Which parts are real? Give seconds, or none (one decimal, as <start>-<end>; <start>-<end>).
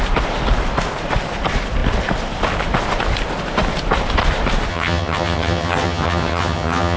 0.0-4.7